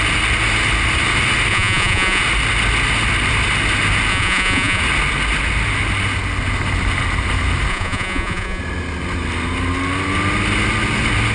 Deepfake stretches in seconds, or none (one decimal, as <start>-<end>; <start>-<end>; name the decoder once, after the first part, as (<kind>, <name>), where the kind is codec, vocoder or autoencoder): 1.5-2.2 (vocoder, Vocos); 4.1-4.8; 7.7-8.6